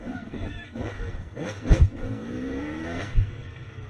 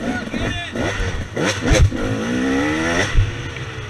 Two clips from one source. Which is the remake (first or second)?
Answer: first